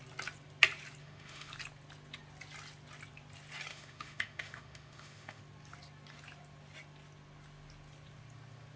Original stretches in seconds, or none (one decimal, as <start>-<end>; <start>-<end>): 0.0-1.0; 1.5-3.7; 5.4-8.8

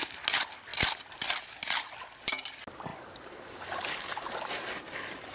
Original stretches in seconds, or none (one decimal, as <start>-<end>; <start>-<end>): 0.0-2.9; 3.6-5.3

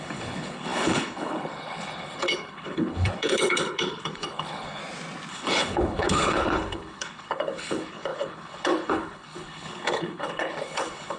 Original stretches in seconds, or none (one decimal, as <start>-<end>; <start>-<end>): 4.8-5.3